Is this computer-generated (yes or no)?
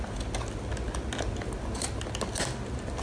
no